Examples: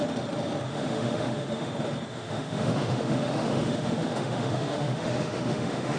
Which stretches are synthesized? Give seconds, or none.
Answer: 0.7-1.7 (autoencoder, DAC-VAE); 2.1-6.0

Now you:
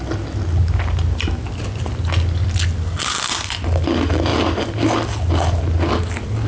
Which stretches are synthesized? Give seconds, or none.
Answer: none

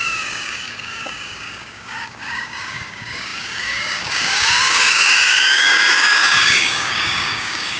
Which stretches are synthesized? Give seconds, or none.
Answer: 0.0-7.8 (codec, DAC)

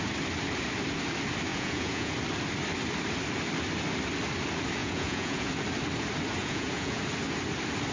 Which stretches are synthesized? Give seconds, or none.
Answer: 1.5-2.1 (vocoder, Vocos); 4.8-5.5; 6.4-7.0

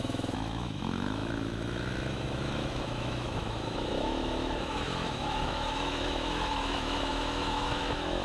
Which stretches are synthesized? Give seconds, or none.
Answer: 0.0-8.2 (autoencoder, DAC-VAE)

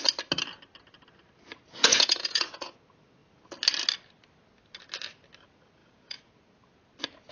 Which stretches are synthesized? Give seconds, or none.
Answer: 1.8-2.7 (vocoder, Vocos); 5.8-6.3

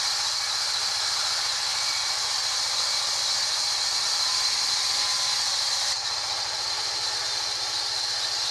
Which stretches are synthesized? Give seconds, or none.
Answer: none